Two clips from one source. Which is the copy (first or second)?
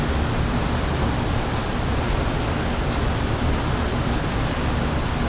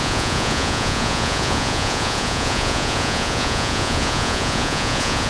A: second